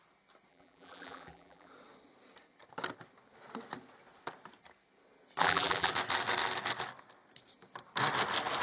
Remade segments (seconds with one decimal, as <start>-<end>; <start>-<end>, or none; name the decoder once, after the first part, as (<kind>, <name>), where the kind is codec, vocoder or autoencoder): 0.5-1.7 (vocoder, BigVGAN v2); 5.4-5.9